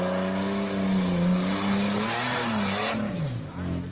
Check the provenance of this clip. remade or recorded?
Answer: recorded